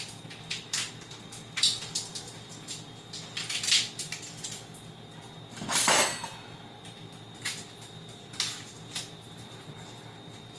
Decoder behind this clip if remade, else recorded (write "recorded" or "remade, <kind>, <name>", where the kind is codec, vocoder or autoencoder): remade, vocoder, BigVGAN v2